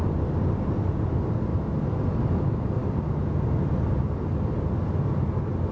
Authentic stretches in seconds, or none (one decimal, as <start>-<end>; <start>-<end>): 0.0-5.7